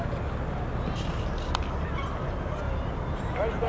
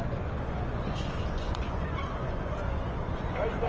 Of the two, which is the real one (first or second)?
first